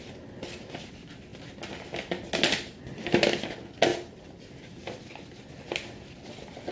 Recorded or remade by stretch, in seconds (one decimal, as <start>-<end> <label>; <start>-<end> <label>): 0.0-6.7 recorded